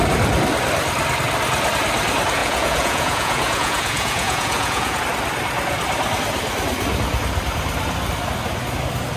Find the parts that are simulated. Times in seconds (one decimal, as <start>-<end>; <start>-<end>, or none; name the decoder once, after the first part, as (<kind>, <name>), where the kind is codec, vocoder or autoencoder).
2.4-5.0 (vocoder, Vocos)